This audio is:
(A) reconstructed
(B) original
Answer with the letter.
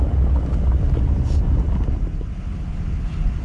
B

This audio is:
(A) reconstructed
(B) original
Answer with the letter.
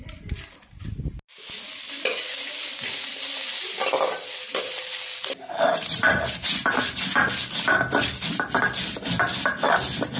B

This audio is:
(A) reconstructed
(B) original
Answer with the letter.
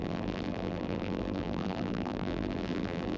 A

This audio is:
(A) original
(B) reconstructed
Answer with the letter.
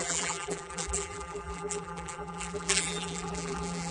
B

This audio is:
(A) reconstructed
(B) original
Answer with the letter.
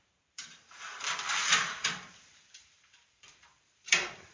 A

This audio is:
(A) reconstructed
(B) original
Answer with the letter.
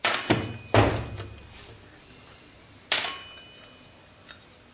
B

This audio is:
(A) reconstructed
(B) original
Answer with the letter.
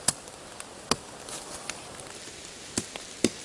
B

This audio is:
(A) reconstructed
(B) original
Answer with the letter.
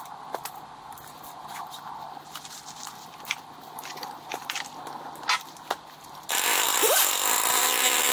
B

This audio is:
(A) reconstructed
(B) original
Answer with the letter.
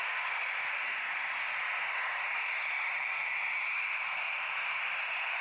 B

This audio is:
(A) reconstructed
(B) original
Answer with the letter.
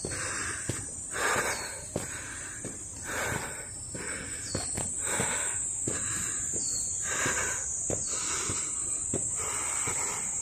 B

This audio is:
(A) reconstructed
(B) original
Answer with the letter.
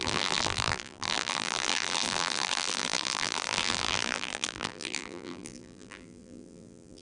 A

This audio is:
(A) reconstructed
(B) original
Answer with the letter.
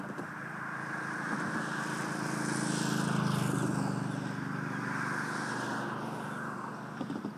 B